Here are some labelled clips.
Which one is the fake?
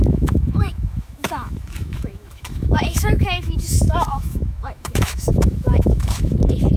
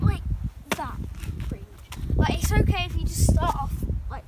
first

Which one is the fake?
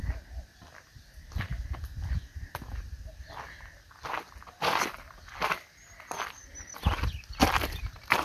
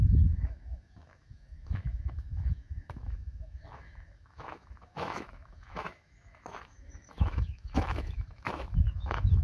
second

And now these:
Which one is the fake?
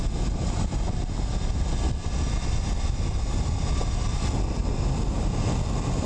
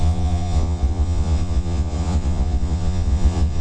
second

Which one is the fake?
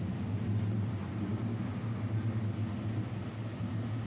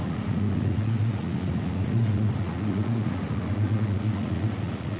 second